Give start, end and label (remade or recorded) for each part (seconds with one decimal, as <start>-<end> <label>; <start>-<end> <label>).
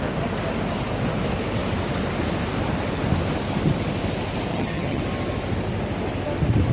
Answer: 0.0-4.5 recorded; 4.5-5.0 remade; 5.0-6.7 recorded